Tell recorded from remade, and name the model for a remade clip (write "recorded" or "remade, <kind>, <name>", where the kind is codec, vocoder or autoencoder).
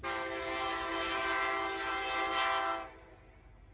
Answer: recorded